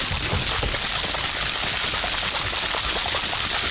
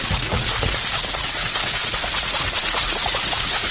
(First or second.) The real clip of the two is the first